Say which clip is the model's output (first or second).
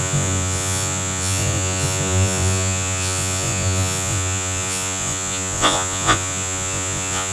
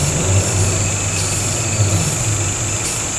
first